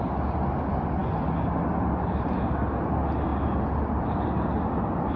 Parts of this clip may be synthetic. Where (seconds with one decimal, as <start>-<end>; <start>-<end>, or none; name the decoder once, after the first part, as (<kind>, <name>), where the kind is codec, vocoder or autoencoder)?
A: none